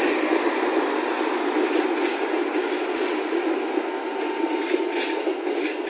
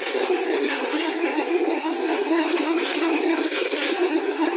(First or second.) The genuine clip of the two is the first